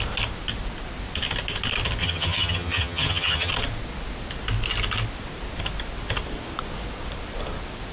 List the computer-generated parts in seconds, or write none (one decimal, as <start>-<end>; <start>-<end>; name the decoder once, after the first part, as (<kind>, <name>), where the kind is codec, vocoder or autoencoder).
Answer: 2.0-3.5 (vocoder, HiFi-GAN)